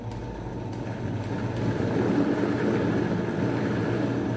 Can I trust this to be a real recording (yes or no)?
yes